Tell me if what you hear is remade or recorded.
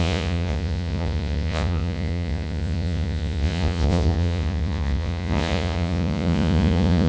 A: remade